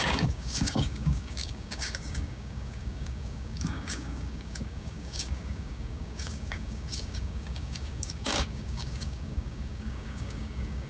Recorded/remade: remade